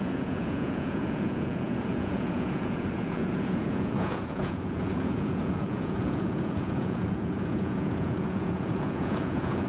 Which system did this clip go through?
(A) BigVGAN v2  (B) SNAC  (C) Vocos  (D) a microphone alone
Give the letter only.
C